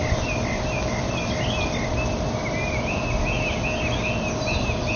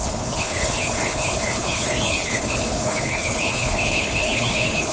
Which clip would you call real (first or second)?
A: first